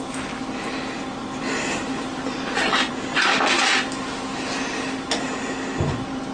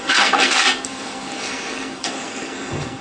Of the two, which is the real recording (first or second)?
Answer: first